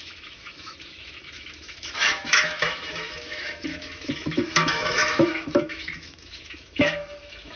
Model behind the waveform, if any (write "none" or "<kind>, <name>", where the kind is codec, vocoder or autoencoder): autoencoder, DAC-VAE